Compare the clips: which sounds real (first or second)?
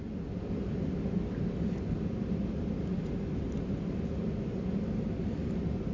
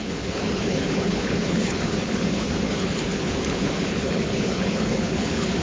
first